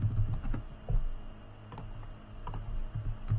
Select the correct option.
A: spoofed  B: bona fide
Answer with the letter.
B